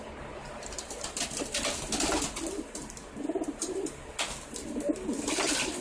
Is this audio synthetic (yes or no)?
no